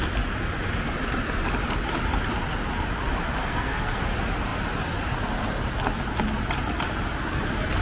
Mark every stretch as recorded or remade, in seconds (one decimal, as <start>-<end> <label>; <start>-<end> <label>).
0.0-3.4 recorded; 3.4-4.0 remade; 4.0-7.8 recorded